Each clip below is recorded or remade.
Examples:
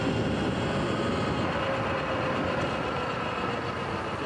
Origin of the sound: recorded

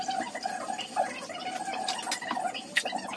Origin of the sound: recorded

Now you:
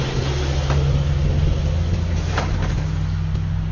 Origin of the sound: recorded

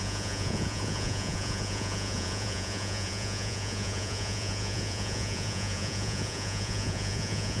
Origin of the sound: remade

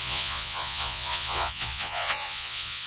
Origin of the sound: remade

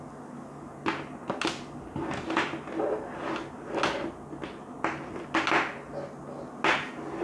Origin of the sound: recorded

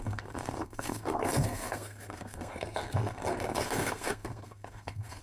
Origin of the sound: remade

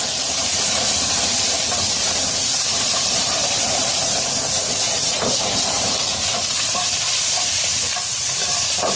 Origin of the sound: remade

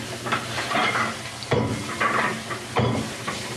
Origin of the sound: recorded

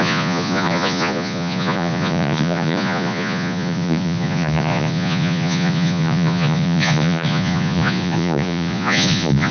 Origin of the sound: remade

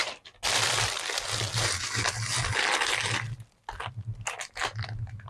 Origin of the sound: recorded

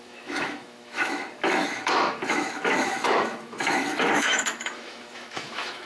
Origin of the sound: remade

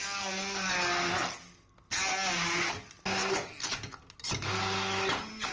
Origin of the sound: recorded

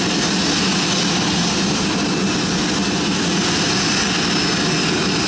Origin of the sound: recorded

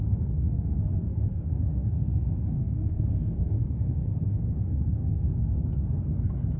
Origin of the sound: remade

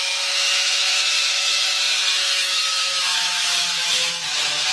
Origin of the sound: remade